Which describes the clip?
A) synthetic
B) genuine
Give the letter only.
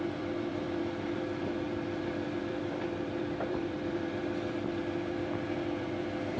A